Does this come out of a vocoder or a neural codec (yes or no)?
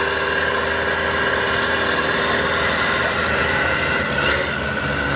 no